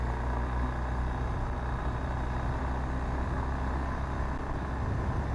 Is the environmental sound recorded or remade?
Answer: recorded